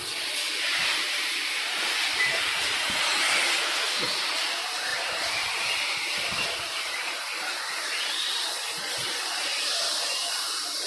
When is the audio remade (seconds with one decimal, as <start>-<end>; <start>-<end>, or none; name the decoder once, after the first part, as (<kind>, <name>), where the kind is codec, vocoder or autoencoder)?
0.0-3.1 (vocoder, BigVGAN v2); 4.4-10.9